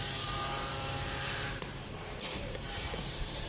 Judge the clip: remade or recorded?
remade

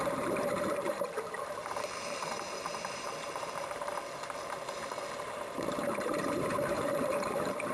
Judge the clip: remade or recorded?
remade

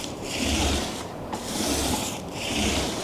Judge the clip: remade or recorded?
remade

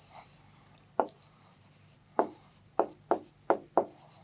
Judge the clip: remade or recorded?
remade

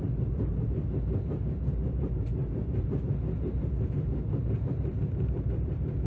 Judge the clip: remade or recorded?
remade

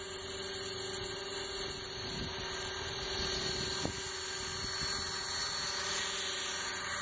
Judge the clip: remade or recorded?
recorded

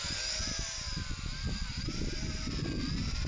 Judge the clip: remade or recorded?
recorded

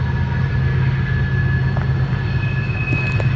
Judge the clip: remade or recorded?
recorded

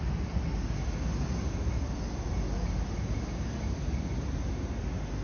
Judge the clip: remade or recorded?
recorded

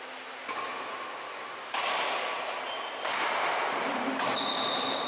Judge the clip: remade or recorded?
remade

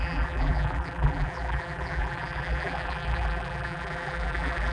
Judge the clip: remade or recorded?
remade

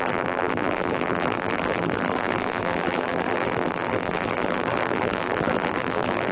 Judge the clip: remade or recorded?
remade